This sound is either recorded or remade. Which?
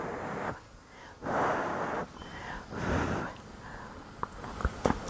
recorded